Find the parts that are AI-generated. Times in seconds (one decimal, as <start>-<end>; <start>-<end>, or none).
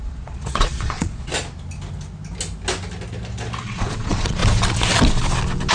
0.0-1.3; 3.6-4.4